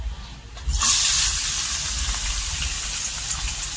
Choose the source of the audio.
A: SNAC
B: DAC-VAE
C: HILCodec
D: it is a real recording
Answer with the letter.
D